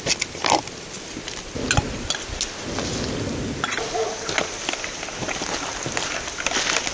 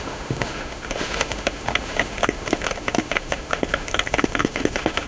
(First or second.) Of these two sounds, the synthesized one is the second